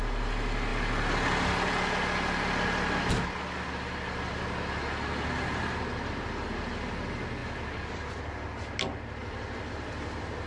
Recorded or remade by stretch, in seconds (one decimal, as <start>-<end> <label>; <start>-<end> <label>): 0.0-10.5 recorded